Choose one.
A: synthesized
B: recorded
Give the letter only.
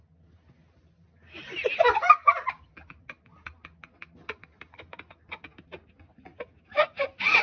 B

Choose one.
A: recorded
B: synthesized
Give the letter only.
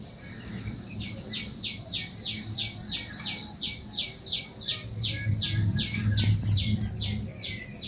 A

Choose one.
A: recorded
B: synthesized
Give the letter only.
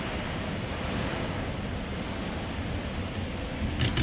A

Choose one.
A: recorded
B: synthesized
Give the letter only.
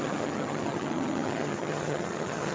B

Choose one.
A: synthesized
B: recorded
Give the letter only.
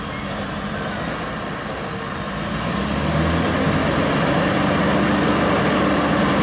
B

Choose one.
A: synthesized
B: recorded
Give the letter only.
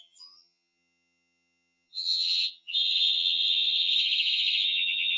A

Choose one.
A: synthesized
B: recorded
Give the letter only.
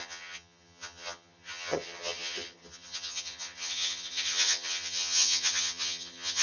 A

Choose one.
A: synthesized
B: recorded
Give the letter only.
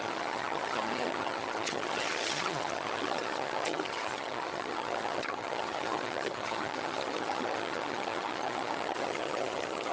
A